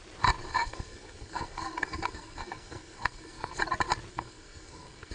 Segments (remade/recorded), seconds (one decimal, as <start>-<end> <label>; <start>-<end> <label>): 0.0-0.5 recorded; 0.5-3.6 remade; 3.6-4.1 recorded; 4.1-5.1 remade